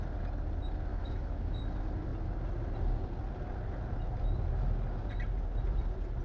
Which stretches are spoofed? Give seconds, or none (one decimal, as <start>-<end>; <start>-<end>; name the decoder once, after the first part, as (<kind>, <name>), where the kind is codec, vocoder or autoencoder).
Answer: 0.9-1.6 (autoencoder, DAC-VAE)